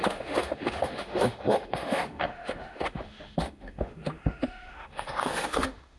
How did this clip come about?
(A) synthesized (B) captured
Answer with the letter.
A